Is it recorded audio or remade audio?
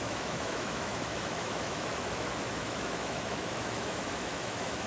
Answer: remade